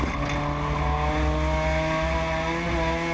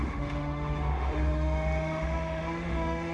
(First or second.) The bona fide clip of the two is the first